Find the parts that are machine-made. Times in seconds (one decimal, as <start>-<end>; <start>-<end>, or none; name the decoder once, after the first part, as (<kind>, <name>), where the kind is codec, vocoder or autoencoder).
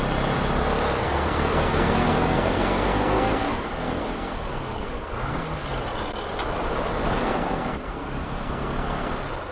1.0-5.8 (codec, SNAC); 7.2-9.1